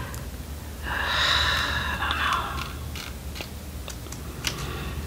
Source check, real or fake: real